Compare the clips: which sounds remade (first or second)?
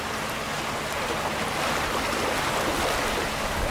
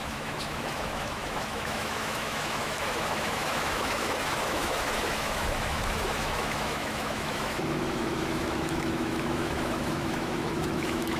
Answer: second